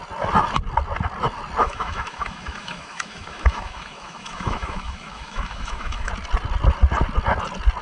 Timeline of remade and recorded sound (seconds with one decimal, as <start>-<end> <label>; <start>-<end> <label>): 0.0-1.6 recorded; 1.6-6.1 remade; 6.1-7.8 recorded